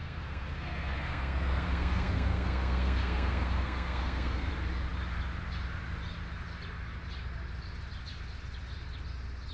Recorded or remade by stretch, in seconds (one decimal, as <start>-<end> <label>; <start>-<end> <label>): 0.0-4.5 remade; 4.5-9.5 recorded